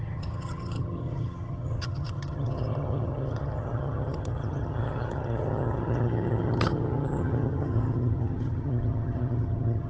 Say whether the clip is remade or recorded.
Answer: remade